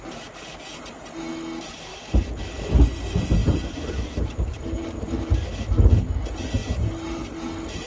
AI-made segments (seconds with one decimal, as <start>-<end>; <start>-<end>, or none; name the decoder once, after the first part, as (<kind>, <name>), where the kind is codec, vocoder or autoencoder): 3.4-5.1 (vocoder, BigVGAN v2); 6.6-7.2